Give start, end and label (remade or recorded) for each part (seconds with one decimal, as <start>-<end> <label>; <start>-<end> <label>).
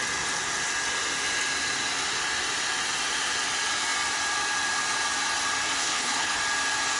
0.0-5.8 recorded; 5.8-6.4 remade; 6.4-7.0 recorded